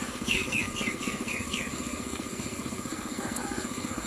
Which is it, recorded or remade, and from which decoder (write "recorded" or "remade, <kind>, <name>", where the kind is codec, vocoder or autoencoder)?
remade, codec, SNAC